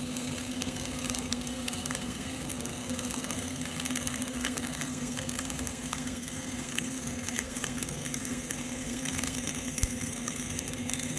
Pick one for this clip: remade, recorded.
remade